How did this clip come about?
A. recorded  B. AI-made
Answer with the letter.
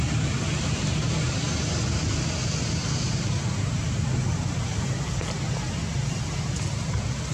A